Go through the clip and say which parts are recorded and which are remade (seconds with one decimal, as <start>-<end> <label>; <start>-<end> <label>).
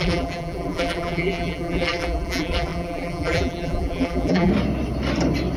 0.0-4.5 remade; 4.5-5.6 recorded